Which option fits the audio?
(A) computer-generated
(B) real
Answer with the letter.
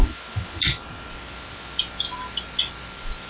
B